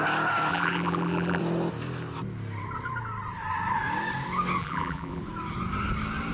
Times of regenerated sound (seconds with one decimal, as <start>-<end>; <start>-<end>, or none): 0.5-1.4; 4.6-5.2